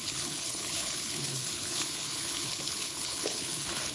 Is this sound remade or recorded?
remade